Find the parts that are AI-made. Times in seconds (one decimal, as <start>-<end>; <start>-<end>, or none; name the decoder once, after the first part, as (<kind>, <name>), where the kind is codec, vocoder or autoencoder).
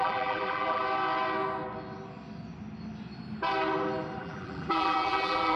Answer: 0.0-0.8 (vocoder, BigVGAN v2); 4.2-5.6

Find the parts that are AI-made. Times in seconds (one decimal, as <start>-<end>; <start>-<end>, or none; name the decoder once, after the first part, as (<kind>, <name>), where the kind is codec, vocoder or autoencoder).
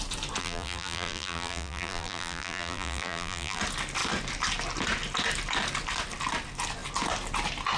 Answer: 0.4-3.6 (vocoder, BigVGAN v2)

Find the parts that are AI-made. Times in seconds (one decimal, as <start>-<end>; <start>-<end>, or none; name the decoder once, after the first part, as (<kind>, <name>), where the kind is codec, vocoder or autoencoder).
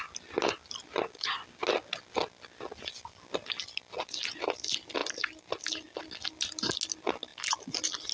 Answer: none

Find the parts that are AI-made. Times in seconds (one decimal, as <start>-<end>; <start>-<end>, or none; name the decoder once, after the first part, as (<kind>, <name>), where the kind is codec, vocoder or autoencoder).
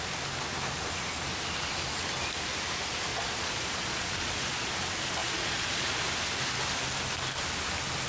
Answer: 3.1-4.7 (vocoder, Vocos); 5.2-6.1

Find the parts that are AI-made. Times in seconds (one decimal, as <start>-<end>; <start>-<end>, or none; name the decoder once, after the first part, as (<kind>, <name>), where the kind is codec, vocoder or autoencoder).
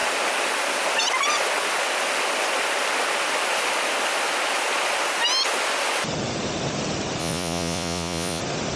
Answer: 7.2-8.4 (vocoder, Vocos)